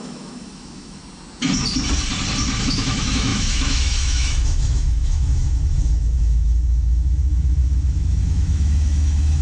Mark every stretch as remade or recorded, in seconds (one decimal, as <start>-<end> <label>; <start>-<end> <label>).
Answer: 0.0-1.0 remade; 1.0-2.6 recorded; 2.6-9.4 remade